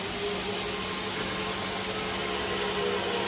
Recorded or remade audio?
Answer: recorded